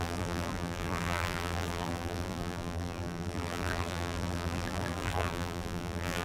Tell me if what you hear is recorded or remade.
remade